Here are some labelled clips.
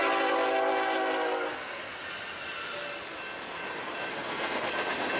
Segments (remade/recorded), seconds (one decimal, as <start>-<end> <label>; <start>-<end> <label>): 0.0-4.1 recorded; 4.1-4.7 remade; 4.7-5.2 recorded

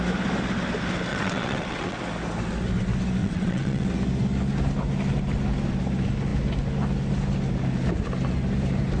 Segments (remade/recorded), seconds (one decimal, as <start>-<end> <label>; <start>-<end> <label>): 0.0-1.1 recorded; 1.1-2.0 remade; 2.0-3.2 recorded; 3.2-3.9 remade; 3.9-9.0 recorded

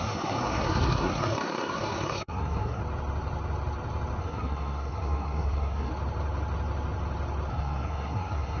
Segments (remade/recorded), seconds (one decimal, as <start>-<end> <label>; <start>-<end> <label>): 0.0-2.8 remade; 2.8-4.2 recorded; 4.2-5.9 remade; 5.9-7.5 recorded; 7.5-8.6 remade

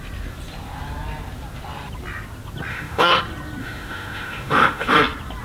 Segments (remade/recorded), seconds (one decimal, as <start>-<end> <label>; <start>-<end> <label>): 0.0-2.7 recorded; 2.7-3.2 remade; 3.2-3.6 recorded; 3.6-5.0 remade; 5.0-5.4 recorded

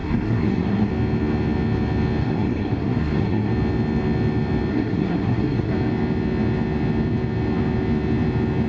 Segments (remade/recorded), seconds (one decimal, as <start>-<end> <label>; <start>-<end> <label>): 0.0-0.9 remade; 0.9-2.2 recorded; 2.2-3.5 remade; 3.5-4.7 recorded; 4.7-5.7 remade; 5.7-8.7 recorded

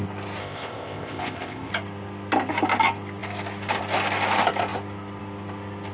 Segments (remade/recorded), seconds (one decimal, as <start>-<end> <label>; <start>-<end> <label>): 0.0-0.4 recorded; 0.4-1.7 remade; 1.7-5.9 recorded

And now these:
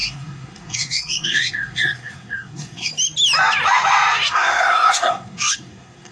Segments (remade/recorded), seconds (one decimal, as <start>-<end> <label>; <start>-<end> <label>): 0.0-2.9 remade; 2.9-4.3 recorded; 4.3-6.1 remade